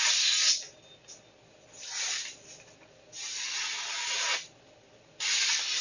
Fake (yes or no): no